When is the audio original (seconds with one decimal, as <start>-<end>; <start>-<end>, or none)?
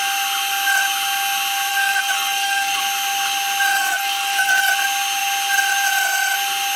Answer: 0.0-1.7; 2.8-3.7; 4.7-6.8